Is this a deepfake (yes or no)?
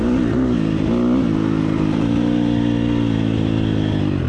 no